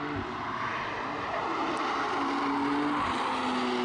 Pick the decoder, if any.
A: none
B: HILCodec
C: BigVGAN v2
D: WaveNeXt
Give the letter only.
A